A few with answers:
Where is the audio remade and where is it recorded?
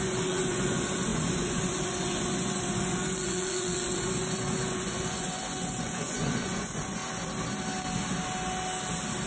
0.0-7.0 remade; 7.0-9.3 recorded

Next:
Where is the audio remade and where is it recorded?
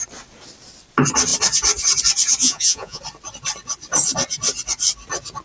0.0-2.4 recorded; 2.4-3.0 remade; 3.0-5.4 recorded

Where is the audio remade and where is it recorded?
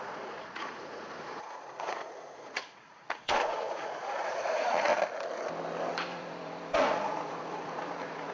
0.0-4.9 remade; 4.9-5.9 recorded; 5.9-8.3 remade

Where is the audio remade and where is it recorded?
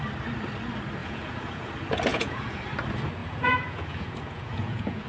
0.0-1.0 recorded; 1.0-1.7 remade; 1.7-2.1 recorded; 2.1-2.6 remade; 2.6-3.2 recorded; 3.2-5.1 remade